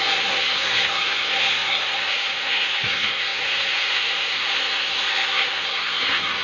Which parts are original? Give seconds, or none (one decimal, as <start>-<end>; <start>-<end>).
none